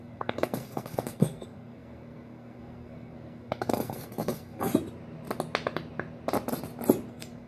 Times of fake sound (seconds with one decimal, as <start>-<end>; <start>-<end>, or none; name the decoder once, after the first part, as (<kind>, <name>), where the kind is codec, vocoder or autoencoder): 0.0-4.7 (codec, SNAC); 7.1-7.5